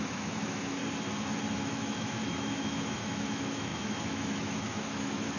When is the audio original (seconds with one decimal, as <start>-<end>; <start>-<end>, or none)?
0.8-1.5